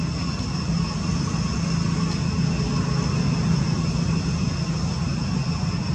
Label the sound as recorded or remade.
recorded